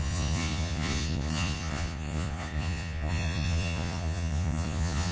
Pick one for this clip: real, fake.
fake